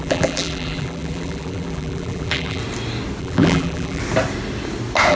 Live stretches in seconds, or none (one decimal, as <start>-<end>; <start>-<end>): 2.6-3.2; 4.0-5.1